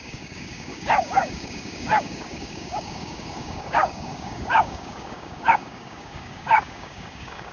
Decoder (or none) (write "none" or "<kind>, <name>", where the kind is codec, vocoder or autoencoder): codec, DAC